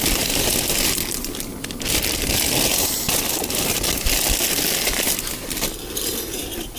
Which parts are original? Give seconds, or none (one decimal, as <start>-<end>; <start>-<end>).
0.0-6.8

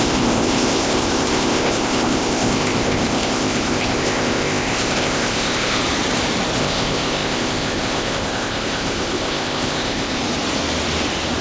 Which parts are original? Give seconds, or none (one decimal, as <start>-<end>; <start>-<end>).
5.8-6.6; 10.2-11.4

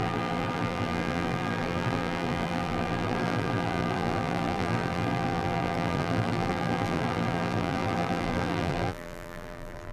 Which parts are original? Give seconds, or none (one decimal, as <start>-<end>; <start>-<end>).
none

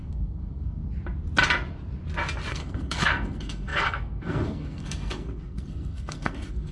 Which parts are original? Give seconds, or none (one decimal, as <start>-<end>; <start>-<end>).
0.8-2.5